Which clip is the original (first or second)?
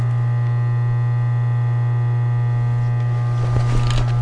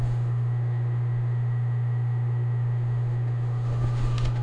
first